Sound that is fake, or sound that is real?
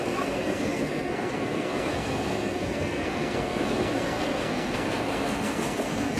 fake